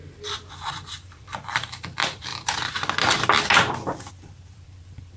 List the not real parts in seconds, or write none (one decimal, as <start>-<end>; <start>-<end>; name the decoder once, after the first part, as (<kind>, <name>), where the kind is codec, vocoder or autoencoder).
0.0-2.3 (vocoder, BigVGAN v2); 4.1-5.2